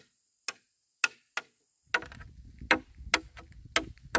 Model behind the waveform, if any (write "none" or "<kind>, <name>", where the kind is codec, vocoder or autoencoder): none